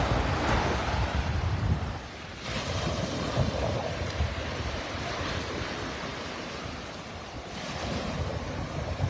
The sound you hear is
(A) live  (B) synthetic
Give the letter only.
B